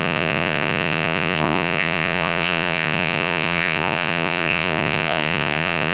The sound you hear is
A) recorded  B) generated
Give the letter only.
B